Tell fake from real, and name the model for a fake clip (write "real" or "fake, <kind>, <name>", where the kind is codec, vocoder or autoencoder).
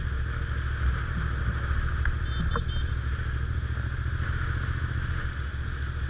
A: real